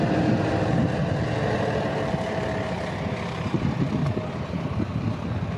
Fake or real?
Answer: real